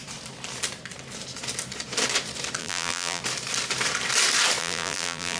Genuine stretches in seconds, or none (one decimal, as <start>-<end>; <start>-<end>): 0.0-2.6; 3.2-4.6